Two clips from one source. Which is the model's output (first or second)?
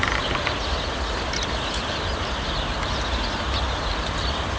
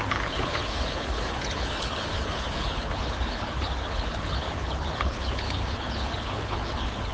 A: second